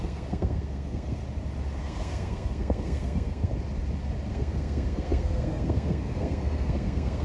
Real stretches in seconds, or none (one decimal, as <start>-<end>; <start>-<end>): 1.2-1.8; 3.5-4.3